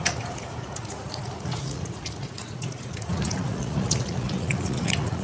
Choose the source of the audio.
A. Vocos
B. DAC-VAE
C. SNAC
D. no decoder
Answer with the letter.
A